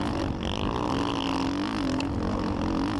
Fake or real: real